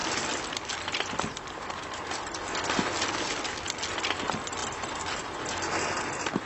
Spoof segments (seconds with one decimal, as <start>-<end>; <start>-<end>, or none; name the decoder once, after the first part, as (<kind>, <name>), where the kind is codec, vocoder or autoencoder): none